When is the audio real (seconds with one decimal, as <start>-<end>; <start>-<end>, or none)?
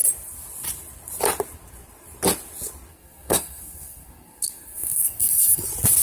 0.0-2.9; 5.6-6.0